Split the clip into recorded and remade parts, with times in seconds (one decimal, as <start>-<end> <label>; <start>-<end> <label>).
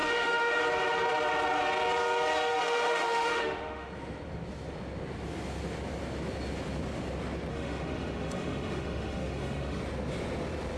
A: 0.0-0.6 remade; 0.6-2.6 recorded; 2.6-3.9 remade; 3.9-7.5 recorded; 7.5-9.8 remade; 9.8-10.8 recorded